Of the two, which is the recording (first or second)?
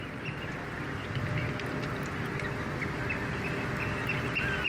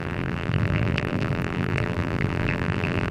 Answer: first